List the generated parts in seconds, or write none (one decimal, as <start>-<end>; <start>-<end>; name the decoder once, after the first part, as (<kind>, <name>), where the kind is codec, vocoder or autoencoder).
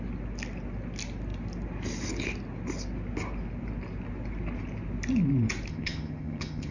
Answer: 5.7-6.7 (vocoder, HiFi-GAN)